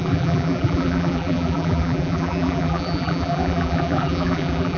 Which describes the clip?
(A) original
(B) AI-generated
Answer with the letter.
B